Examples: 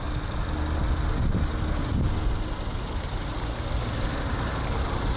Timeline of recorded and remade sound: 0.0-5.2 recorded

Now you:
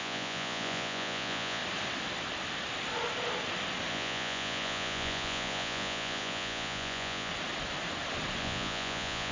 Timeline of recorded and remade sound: 0.0-1.6 remade; 1.6-3.9 recorded; 3.9-7.3 remade; 7.3-8.4 recorded; 8.4-9.3 remade

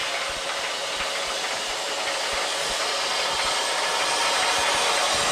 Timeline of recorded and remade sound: 0.0-5.3 recorded

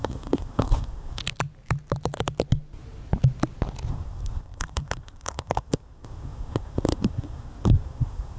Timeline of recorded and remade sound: 0.0-1.2 remade; 1.2-3.9 recorded; 3.9-8.4 remade

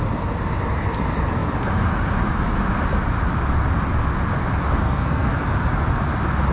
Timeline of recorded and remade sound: 0.0-4.8 recorded; 4.8-5.4 remade; 5.4-6.5 recorded